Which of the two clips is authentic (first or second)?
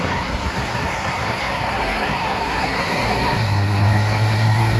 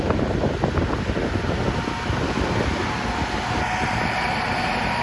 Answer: second